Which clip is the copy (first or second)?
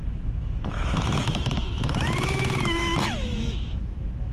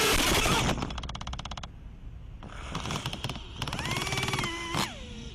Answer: first